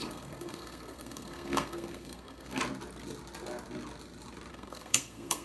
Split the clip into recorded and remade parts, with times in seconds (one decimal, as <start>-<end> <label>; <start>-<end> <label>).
0.0-2.6 remade; 2.6-4.5 recorded; 4.5-5.4 remade